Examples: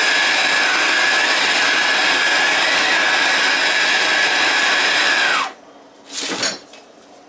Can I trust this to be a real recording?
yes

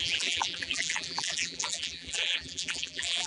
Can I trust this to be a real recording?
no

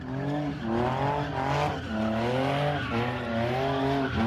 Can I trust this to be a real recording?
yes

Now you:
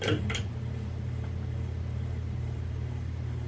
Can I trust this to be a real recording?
no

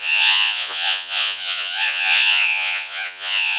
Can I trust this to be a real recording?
no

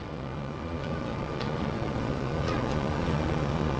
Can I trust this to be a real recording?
no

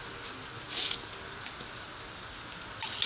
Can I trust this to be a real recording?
yes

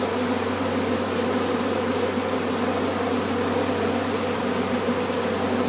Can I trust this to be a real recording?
yes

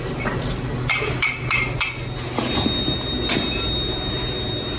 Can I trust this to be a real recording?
yes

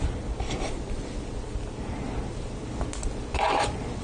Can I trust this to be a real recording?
yes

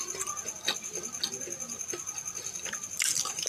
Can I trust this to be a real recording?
yes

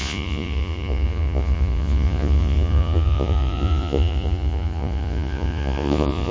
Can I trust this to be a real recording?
no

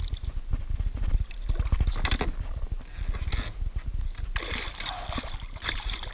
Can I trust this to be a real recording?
yes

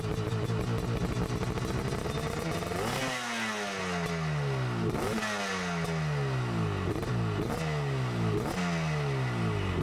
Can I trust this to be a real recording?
yes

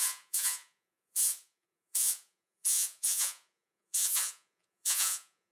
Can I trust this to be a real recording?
no